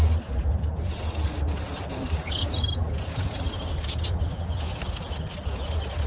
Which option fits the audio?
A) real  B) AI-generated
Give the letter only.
A